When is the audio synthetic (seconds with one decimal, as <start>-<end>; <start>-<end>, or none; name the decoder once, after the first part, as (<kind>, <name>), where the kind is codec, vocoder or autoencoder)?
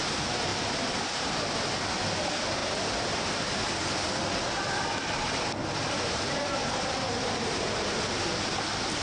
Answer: 0.5-1.6 (vocoder, BigVGAN v2); 5.6-8.2